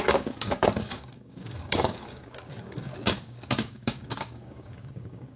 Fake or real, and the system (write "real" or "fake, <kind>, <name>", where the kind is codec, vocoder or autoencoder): fake, codec, DAC